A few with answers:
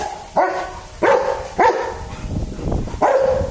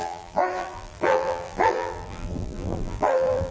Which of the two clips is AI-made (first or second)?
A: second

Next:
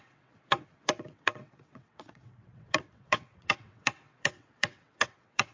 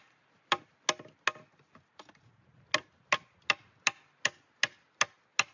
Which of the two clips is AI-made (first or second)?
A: first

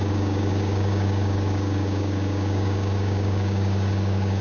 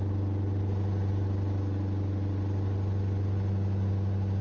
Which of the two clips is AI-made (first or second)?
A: first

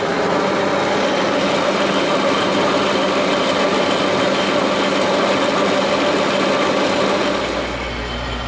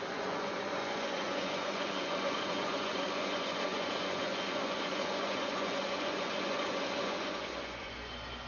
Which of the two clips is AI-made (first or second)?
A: second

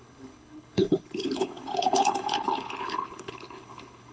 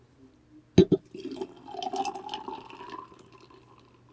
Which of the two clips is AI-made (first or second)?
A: first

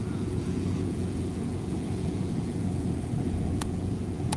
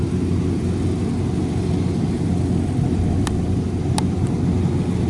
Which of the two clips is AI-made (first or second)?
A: first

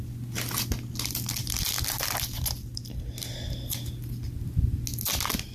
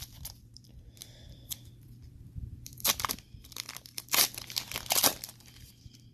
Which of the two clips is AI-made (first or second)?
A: second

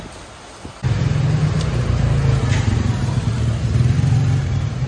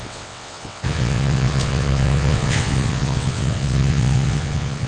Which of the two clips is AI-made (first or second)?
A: second